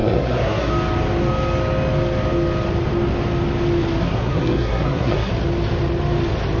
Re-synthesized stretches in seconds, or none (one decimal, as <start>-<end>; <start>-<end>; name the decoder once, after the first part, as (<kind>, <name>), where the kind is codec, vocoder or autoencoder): 0.0-0.7 (codec, SNAC); 4.0-5.3